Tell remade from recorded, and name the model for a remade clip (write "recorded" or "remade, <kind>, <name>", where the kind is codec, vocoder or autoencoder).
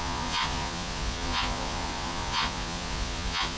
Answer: remade, vocoder, Vocos